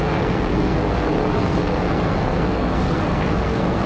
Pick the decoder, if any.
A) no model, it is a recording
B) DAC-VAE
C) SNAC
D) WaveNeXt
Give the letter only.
C